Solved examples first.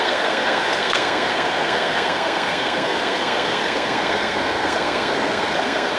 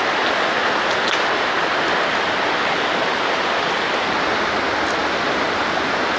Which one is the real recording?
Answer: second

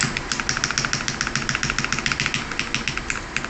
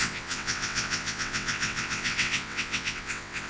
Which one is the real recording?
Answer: first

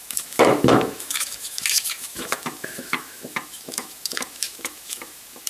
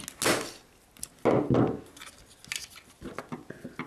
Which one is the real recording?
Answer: second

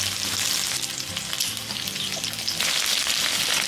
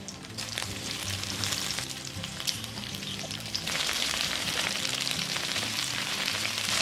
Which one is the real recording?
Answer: first